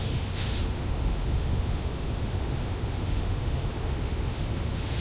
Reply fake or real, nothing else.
fake